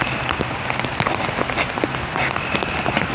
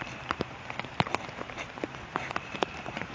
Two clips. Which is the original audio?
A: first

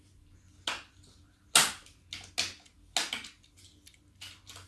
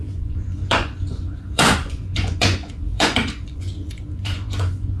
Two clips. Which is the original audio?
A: first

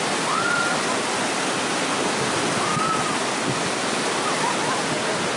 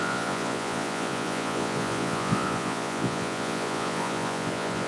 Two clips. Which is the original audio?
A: first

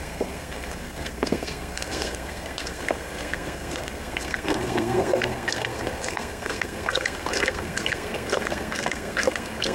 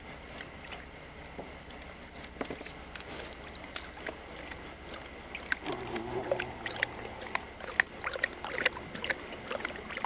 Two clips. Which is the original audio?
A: second